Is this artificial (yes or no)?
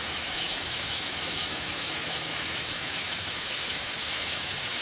yes